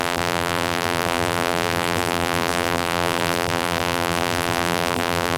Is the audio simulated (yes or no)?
yes